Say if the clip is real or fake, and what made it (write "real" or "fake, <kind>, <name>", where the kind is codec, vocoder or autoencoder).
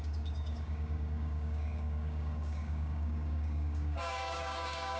fake, codec, DAC